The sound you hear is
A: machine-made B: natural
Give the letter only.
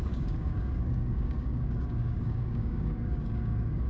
A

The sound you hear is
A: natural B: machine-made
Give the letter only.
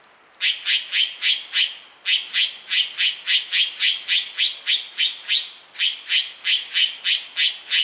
A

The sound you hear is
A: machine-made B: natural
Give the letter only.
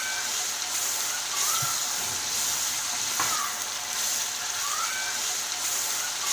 B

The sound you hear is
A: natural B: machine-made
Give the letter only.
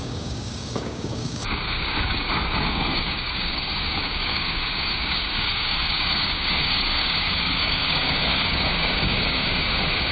B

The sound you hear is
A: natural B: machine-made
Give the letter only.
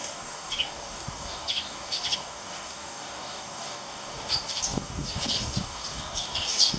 B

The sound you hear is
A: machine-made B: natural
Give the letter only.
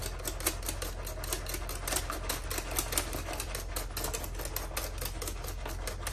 B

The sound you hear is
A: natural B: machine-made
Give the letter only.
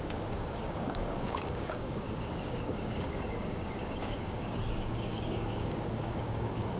B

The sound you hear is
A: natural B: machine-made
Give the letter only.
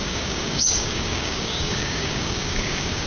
B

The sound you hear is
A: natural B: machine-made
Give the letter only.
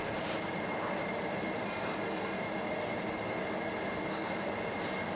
A